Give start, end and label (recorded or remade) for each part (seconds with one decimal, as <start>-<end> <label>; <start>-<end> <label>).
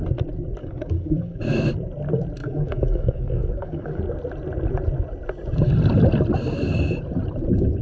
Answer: 0.0-0.6 recorded; 0.6-1.4 remade; 1.4-2.4 recorded; 2.4-4.0 remade; 4.0-7.8 recorded